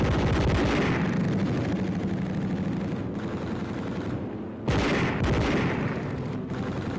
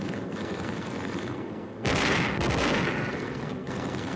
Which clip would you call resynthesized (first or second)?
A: second